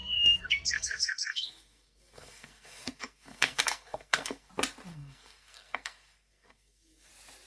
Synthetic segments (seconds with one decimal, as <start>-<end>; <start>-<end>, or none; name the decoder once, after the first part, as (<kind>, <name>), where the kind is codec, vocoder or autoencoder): 0.0-4.5 (codec, SNAC); 4.9-7.1